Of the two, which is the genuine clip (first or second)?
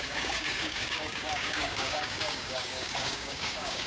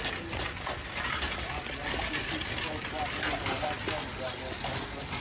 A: second